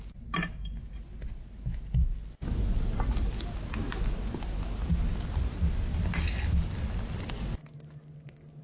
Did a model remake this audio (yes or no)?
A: no